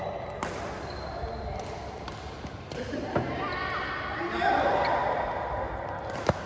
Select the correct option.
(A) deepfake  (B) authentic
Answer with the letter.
B